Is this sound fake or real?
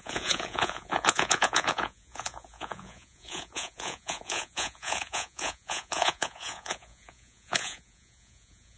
fake